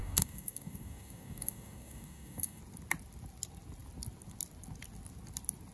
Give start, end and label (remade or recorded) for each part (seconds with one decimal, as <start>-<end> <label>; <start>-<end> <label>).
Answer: 0.0-2.6 remade; 2.6-5.7 recorded